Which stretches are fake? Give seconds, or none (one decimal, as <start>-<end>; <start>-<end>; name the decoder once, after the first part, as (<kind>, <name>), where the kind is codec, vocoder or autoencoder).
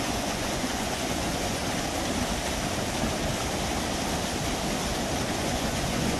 0.0-1.6 (vocoder, Vocos); 5.3-6.2